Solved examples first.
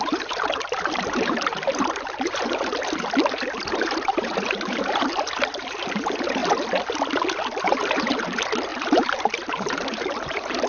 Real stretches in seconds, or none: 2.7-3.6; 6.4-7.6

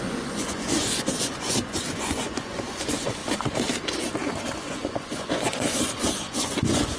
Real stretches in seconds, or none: 3.2-4.6

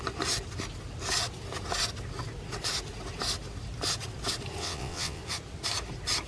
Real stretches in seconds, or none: 0.0-4.6; 5.2-6.3